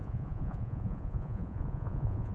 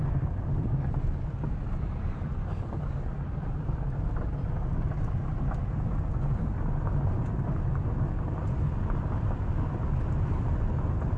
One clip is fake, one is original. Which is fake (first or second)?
first